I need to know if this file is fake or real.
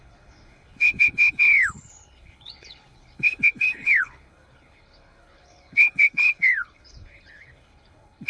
fake